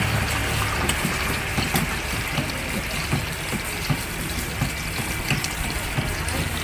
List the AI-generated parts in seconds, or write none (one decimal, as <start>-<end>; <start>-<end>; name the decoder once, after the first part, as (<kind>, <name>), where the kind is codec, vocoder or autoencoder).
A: 0.0-4.5 (vocoder, BigVGAN v2); 5.4-6.6